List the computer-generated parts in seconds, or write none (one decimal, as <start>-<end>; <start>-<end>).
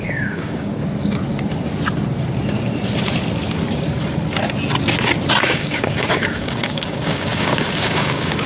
0.0-0.8; 5.4-8.5